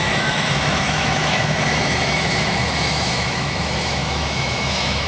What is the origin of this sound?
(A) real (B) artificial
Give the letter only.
B